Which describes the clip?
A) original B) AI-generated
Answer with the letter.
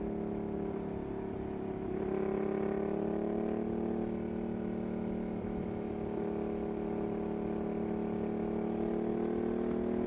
A